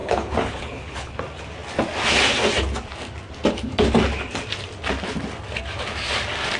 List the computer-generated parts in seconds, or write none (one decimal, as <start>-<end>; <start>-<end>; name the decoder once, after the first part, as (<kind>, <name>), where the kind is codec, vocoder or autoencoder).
0.0-1.2 (codec, HILCodec)